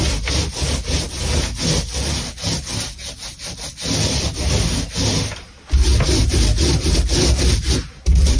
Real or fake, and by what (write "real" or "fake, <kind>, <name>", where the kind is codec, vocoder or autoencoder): real